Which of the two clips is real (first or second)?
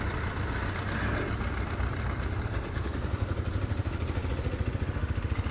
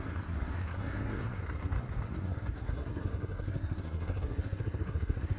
first